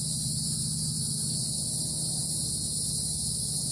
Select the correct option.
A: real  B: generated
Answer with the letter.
A